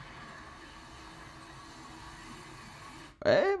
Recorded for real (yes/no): yes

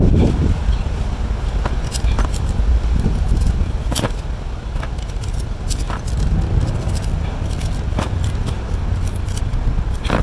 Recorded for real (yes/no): yes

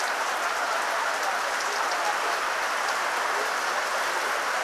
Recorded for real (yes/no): yes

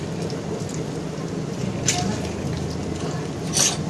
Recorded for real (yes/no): yes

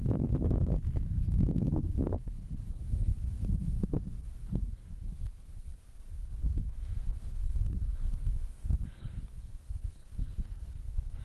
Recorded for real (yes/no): no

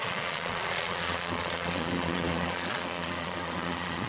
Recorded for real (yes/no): no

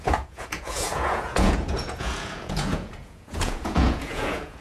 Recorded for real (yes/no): no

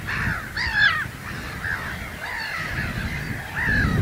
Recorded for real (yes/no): yes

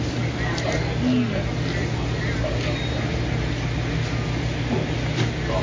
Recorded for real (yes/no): yes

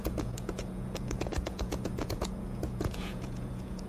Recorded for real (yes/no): no